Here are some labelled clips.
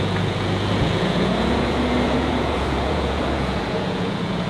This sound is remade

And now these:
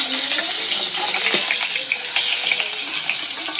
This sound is recorded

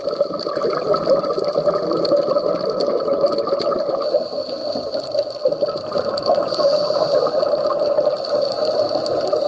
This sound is recorded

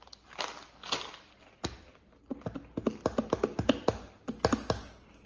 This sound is recorded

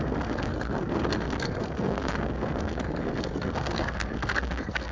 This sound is remade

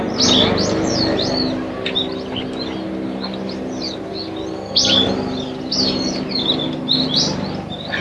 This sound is recorded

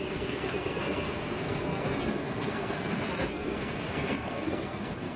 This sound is remade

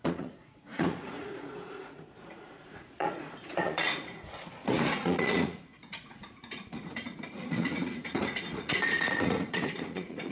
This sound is remade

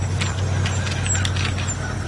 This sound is recorded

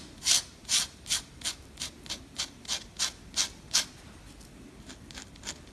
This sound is recorded